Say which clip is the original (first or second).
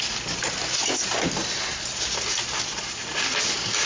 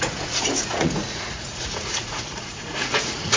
first